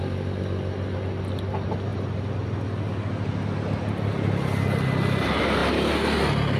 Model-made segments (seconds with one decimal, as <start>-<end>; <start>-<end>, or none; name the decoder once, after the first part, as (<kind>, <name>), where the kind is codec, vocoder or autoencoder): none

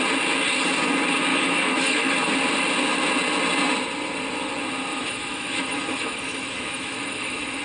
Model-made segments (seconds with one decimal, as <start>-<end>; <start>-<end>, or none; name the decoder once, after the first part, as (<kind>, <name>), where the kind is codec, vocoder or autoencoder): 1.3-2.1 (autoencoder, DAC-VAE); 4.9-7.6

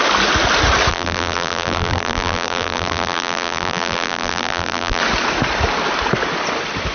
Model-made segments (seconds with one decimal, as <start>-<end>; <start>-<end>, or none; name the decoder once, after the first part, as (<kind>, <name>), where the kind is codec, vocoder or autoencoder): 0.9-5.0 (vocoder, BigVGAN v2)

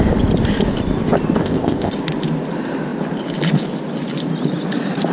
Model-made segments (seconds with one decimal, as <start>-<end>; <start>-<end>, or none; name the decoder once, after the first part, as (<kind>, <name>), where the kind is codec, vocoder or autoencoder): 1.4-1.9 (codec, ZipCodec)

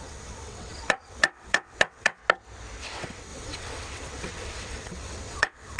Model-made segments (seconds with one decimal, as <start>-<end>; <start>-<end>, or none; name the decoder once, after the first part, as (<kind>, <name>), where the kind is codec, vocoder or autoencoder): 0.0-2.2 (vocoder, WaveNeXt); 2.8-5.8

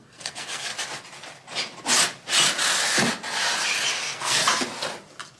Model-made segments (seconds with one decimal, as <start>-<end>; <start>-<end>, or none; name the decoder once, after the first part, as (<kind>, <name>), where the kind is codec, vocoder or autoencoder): 0.0-0.7 (codec, SNAC); 3.9-4.4

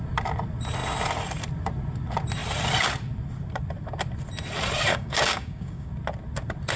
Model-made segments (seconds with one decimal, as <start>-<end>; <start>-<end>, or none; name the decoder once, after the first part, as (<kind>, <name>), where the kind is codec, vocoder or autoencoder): 4.9-5.9 (codec, DAC)

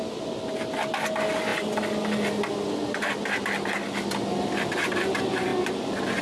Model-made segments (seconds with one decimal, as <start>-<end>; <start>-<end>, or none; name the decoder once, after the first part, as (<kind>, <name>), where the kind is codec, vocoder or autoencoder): none